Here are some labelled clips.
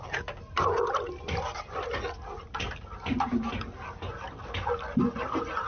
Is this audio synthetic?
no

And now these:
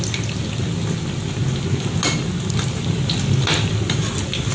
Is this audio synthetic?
no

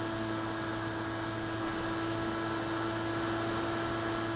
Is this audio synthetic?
no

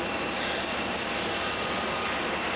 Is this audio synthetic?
no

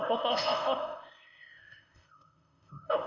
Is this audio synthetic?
yes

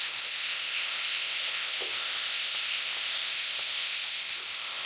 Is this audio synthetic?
yes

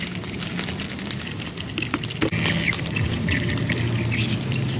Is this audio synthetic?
no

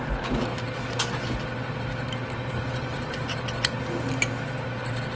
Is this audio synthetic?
no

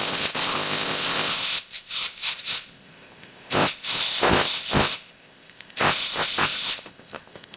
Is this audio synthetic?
yes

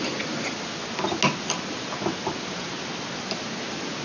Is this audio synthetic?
no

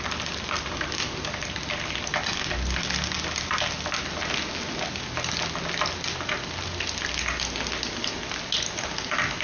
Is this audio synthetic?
no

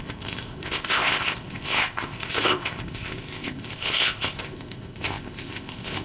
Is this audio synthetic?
yes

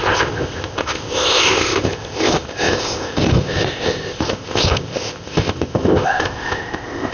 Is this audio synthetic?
yes